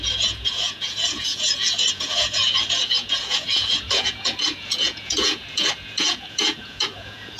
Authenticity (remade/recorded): remade